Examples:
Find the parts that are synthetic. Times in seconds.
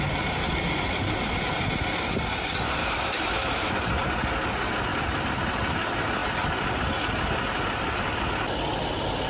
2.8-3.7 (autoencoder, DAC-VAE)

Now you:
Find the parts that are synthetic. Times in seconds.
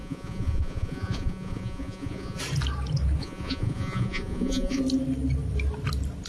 0.0-2.4 (vocoder, Vocos); 3.2-4.8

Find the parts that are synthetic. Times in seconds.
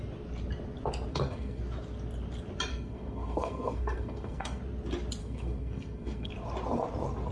1.1-1.6 (codec, SNAC); 2.7-4.6; 5.2-6.3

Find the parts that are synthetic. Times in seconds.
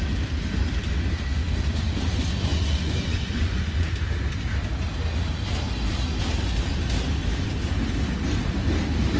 2.5-3.9 (vocoder, Vocos)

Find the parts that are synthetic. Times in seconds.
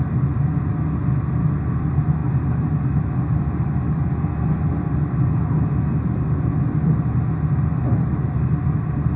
none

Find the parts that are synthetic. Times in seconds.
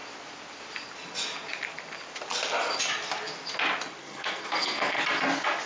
4.0-5.0 (codec, SNAC)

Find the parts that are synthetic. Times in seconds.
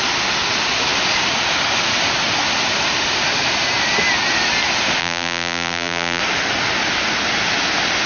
5.0-6.2 (vocoder, BigVGAN v2)